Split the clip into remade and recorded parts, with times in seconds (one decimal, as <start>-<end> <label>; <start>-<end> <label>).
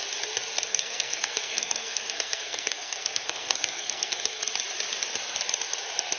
0.0-0.7 recorded; 0.7-4.4 remade; 4.4-6.2 recorded